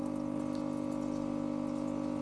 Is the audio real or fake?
real